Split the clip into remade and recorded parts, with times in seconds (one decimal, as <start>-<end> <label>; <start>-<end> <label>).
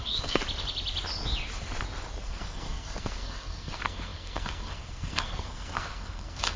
0.0-0.4 remade; 0.4-2.2 recorded; 2.2-6.6 remade